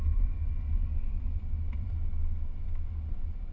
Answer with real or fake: real